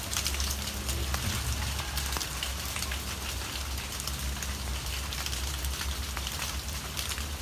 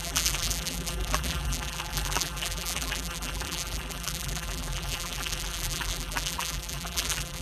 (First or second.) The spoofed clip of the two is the second